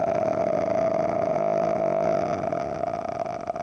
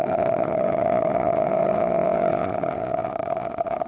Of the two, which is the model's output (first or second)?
second